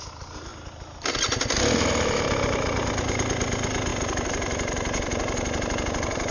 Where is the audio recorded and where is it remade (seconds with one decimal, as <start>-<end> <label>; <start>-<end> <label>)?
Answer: 0.0-6.3 recorded